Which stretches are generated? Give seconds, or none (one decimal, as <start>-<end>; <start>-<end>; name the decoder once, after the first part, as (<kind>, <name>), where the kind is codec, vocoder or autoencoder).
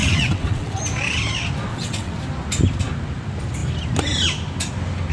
0.0-0.8 (vocoder, WaveNeXt); 1.7-2.2